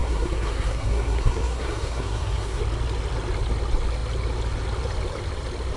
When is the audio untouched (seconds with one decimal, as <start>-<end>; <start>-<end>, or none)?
2.6-5.8